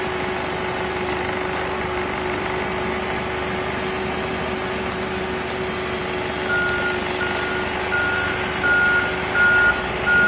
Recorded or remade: recorded